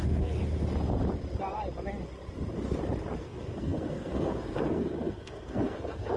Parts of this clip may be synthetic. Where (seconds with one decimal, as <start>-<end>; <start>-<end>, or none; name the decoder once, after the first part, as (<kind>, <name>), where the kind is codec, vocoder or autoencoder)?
0.0-0.4 (codec, SNAC); 3.2-6.2